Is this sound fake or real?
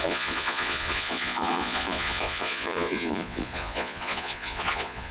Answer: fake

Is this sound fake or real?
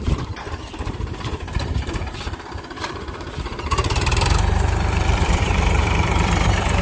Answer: fake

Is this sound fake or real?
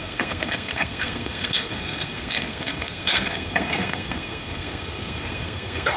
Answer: fake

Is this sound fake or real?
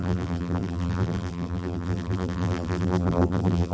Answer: fake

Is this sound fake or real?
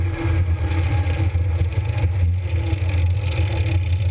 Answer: real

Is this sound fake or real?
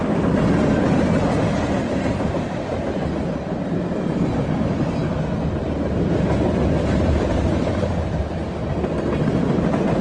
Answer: real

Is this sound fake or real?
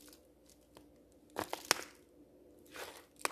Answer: real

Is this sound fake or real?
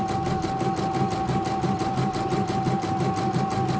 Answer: real